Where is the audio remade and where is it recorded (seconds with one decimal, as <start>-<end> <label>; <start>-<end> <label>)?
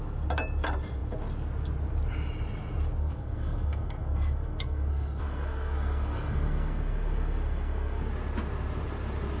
0.0-3.0 recorded; 3.0-8.1 remade; 8.1-9.4 recorded